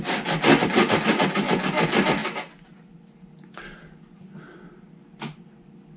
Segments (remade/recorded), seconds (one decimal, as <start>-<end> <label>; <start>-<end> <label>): 0.0-6.0 recorded